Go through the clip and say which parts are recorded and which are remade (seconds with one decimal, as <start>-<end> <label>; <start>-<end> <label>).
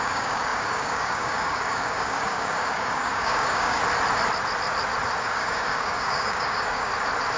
0.0-3.8 remade; 3.8-5.2 recorded; 5.2-6.9 remade; 6.9-7.4 recorded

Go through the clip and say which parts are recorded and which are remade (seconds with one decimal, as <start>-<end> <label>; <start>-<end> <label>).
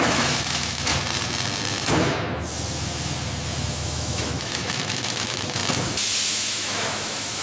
0.0-0.9 remade; 0.9-3.7 recorded; 3.7-5.6 remade; 5.6-6.3 recorded; 6.3-7.4 remade